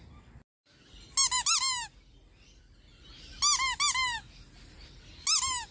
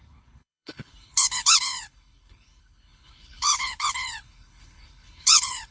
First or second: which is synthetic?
second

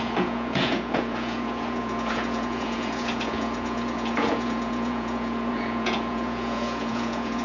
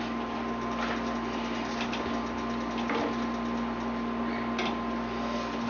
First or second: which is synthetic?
first